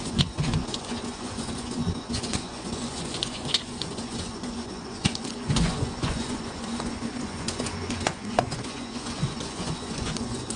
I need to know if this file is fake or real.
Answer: fake